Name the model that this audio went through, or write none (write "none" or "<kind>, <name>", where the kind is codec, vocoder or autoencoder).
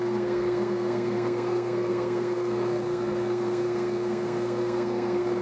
codec, SNAC